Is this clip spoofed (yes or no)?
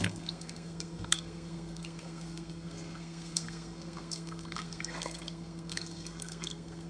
yes